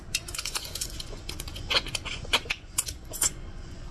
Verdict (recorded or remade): remade